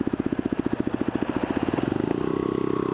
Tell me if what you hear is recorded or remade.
recorded